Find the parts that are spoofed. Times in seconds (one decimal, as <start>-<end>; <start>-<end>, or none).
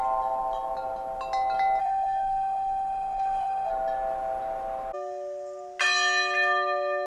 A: 1.8-3.7